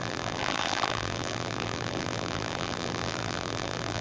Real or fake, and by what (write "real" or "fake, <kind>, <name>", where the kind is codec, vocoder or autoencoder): fake, vocoder, BigVGAN v2